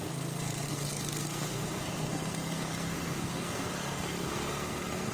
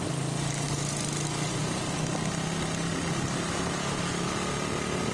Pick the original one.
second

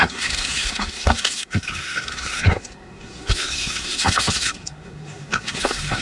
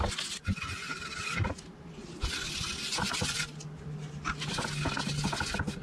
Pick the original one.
second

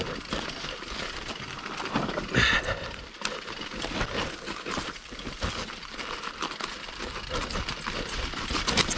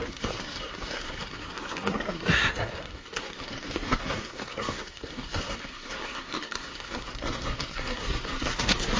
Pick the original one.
first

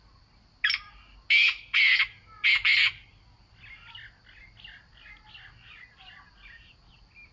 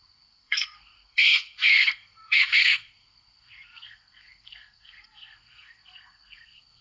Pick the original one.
first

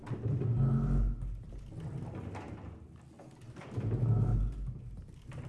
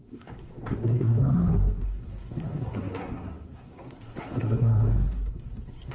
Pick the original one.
first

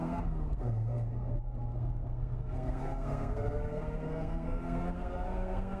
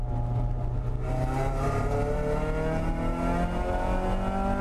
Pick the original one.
second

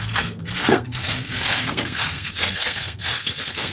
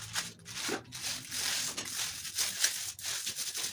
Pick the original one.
second